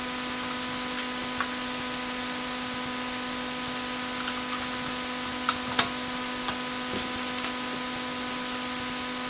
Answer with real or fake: real